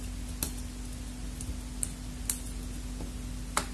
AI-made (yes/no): no